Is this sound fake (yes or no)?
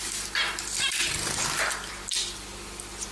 no